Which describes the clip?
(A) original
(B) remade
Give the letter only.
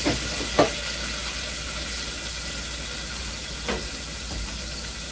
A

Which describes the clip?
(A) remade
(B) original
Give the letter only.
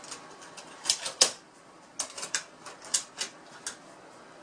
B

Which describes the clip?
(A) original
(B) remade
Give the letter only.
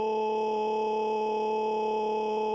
A